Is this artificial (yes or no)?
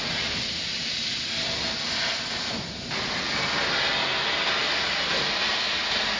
no